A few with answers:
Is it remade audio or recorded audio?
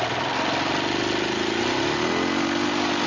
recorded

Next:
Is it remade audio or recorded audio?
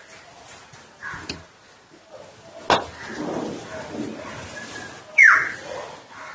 recorded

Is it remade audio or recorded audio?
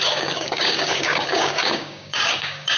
remade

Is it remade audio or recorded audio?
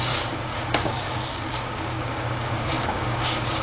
remade